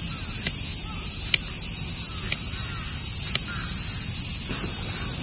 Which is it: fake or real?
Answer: real